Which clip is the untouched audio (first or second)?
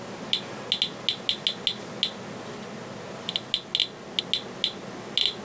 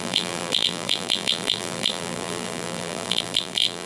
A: first